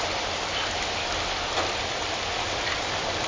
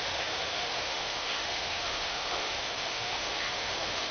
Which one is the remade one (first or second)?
second